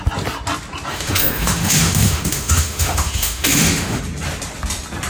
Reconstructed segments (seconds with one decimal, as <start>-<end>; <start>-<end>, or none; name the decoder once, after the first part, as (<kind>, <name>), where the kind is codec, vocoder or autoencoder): 0.9-4.0 (autoencoder, DAC-VAE)